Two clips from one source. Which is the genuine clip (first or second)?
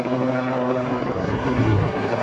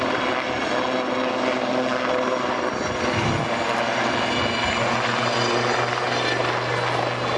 second